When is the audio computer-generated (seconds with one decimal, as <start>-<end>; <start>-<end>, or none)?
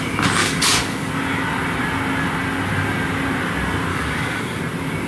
0.4-1.1; 3.9-4.6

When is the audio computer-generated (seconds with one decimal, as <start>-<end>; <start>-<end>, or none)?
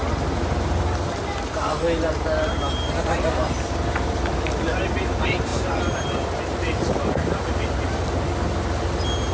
none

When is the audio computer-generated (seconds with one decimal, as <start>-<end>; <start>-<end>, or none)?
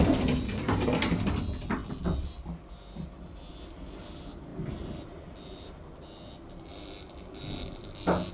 none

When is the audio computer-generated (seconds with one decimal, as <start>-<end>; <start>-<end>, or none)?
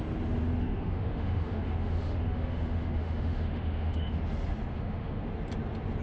0.6-4.2; 4.7-5.2